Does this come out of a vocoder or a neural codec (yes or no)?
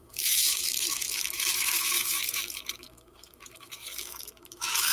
yes